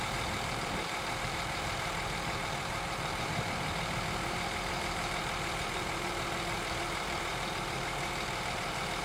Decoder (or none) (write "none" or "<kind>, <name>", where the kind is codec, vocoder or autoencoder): vocoder, BigVGAN v2